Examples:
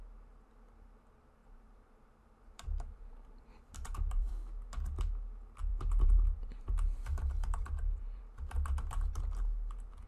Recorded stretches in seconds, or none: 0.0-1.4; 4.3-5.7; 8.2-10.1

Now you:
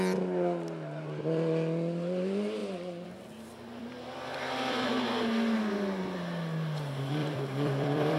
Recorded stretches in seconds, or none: 0.0-2.6; 4.9-7.2

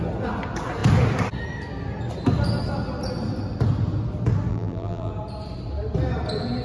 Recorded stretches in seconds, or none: 0.0-4.5; 5.1-6.6

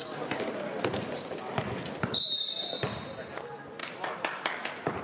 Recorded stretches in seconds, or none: 3.0-3.8

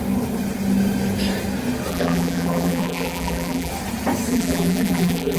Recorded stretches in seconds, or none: 0.0-1.9; 3.7-4.3

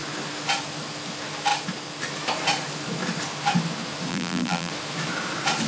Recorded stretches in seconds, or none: 0.0-4.1; 4.7-5.7